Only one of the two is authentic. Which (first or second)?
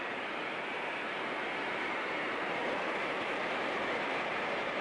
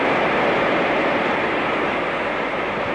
second